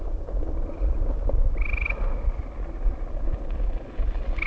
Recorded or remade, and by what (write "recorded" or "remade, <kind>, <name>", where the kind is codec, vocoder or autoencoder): recorded